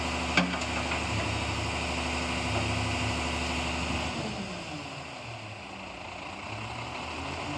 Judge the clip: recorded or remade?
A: recorded